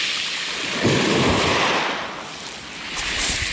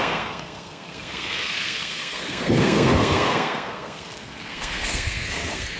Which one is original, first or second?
first